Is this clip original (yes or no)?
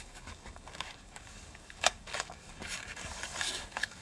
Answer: no